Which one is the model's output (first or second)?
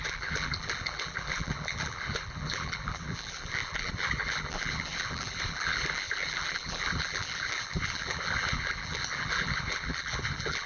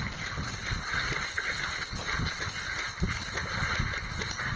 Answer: first